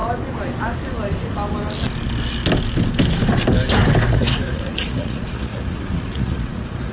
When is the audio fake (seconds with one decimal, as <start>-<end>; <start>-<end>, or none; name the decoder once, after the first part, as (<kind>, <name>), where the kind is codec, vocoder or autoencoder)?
4.1-6.9 (vocoder, Vocos)